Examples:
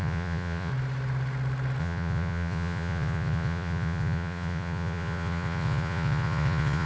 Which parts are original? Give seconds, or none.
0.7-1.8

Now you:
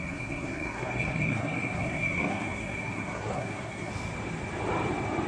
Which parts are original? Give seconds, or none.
3.9-5.3